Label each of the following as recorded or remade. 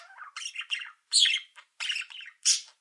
recorded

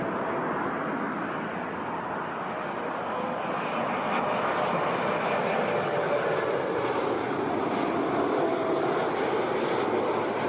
recorded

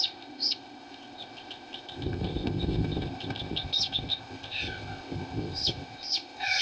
remade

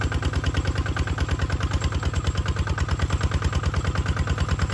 recorded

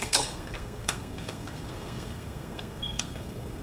remade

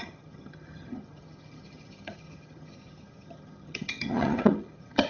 remade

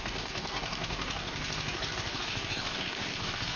remade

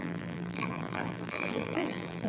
remade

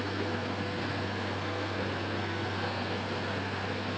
remade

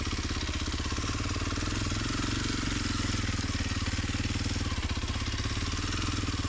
recorded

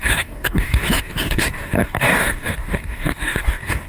remade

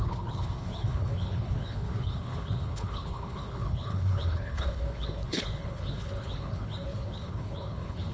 remade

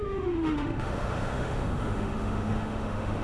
remade